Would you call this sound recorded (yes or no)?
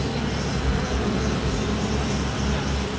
yes